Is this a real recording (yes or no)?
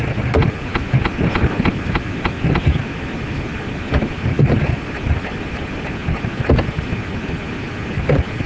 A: yes